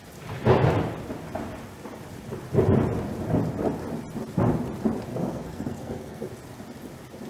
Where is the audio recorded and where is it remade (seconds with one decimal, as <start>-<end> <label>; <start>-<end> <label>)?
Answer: 0.0-5.1 recorded; 5.1-6.3 remade; 6.3-7.3 recorded